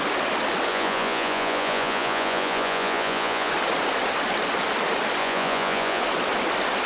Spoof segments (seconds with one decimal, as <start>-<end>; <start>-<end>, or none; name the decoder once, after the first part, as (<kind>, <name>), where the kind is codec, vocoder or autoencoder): 0.7-3.5 (vocoder, Vocos); 5.2-6.0